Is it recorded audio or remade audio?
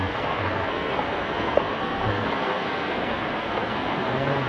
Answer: remade